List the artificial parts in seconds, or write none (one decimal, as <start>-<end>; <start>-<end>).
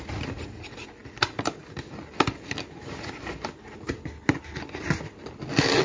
1.0-1.6